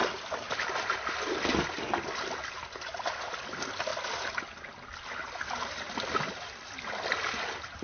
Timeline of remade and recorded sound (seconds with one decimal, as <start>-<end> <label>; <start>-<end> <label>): 0.0-7.8 recorded